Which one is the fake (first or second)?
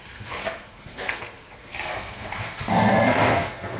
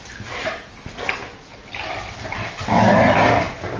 first